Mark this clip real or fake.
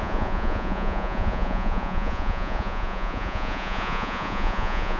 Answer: fake